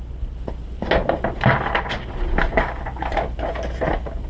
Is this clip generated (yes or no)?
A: no